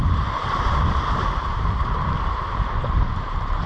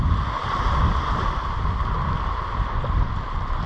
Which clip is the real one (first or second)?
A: second